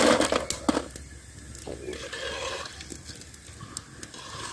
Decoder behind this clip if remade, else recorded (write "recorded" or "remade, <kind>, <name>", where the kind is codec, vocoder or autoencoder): recorded